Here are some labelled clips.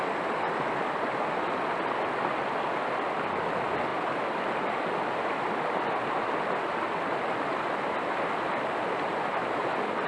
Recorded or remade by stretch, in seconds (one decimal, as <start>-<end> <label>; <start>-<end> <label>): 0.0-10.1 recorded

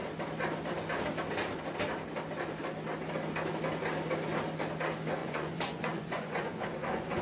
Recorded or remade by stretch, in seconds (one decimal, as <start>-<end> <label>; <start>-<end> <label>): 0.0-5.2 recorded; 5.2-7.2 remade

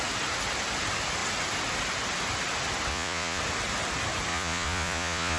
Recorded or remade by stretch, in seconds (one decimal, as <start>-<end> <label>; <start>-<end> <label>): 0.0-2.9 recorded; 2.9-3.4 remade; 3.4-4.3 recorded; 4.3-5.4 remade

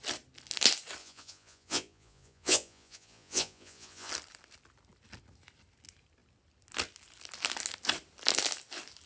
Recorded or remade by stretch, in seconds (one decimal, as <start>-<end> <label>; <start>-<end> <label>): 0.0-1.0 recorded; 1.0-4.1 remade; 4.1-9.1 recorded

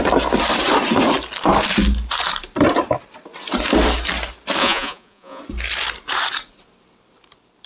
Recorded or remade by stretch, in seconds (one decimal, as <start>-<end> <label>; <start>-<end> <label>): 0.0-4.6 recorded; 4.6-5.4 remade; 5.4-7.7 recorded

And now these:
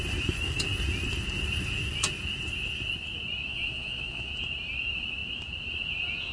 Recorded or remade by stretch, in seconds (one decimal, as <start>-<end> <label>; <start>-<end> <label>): 0.0-3.5 recorded; 3.5-4.3 remade; 4.3-6.3 recorded

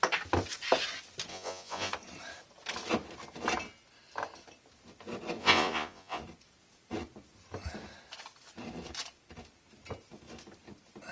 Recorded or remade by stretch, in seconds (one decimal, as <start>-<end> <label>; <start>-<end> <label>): 0.0-1.3 recorded; 1.3-1.9 remade; 1.9-5.4 recorded; 5.4-6.2 remade; 6.2-11.1 recorded